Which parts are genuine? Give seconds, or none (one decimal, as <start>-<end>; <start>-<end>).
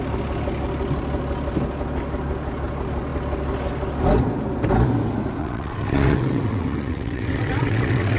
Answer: 0.0-5.4